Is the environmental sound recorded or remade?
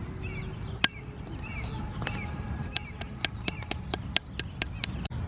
recorded